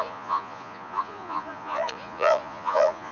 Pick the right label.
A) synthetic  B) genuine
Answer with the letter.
A